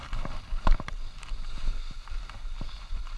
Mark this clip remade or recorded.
recorded